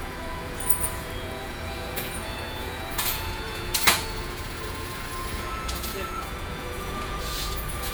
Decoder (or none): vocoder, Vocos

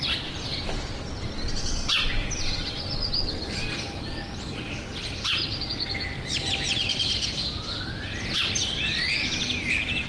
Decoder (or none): none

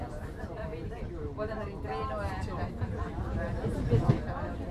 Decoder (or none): none